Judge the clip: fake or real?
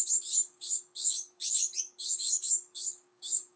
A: fake